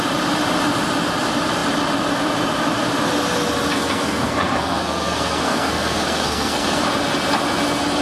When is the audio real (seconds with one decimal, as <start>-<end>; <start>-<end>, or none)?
0.0-3.7; 6.8-8.0